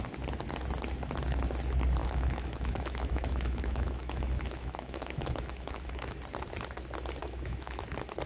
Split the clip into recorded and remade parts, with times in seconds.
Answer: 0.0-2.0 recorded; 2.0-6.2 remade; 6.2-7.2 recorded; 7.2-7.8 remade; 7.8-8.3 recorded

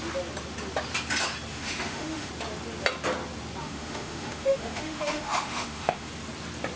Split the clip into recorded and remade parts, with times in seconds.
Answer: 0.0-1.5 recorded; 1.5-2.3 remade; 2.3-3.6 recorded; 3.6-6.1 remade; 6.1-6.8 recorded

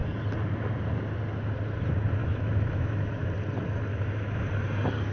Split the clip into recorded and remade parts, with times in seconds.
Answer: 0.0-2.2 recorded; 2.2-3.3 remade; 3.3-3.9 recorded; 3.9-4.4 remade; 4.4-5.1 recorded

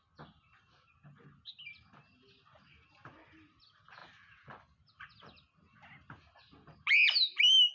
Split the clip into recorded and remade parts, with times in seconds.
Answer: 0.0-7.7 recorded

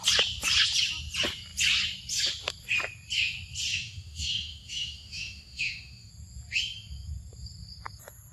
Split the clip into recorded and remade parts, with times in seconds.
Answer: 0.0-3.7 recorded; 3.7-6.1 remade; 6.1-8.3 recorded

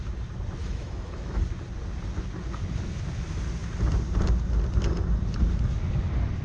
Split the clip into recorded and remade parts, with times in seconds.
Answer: 0.0-0.6 recorded; 0.6-1.4 remade; 1.4-6.4 recorded